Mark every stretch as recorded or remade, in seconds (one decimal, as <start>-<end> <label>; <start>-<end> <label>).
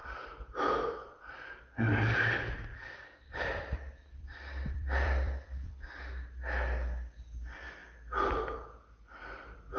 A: 0.0-2.7 recorded; 2.7-6.1 remade; 6.1-9.8 recorded